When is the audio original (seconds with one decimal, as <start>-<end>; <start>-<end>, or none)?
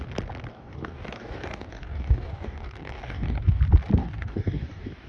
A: 0.0-0.5; 3.6-4.0